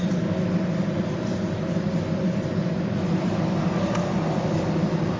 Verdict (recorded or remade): recorded